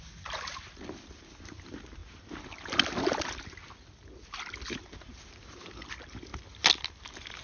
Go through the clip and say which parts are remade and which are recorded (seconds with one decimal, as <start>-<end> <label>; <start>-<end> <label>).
0.0-7.4 recorded